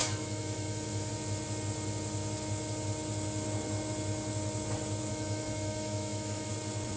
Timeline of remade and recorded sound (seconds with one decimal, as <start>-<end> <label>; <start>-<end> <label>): 0.0-1.1 remade; 1.1-5.1 recorded; 5.1-6.5 remade; 6.5-7.0 recorded